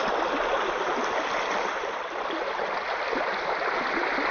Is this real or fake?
real